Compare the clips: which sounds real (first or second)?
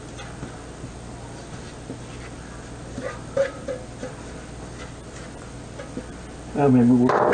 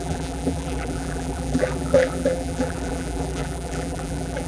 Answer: first